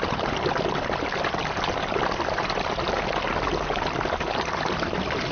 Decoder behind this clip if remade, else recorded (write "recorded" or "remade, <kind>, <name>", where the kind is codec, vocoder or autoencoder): recorded